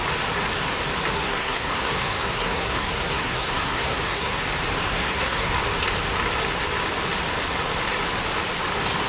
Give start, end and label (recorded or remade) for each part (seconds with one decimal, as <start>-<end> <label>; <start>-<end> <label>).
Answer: 0.0-1.1 recorded; 1.1-4.4 remade; 4.4-4.9 recorded; 4.9-5.5 remade; 5.5-9.1 recorded